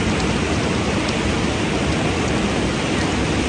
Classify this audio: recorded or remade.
recorded